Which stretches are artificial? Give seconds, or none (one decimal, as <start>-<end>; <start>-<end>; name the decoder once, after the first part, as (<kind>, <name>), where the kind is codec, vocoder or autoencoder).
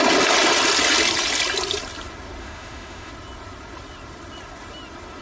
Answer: 2.4-3.1 (autoencoder, DAC-VAE)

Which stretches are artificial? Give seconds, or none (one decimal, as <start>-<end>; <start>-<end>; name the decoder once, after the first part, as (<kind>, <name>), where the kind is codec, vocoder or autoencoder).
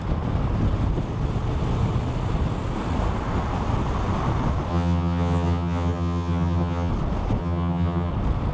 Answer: 4.7-6.9 (vocoder, HiFi-GAN); 7.4-8.1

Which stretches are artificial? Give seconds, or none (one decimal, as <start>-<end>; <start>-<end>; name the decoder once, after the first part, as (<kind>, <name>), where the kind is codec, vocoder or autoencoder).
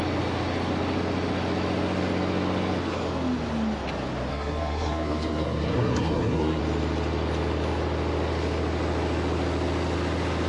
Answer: 4.3-6.6 (codec, SNAC)